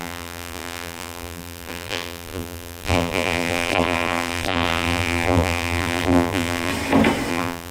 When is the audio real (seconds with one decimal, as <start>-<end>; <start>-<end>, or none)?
6.7-7.3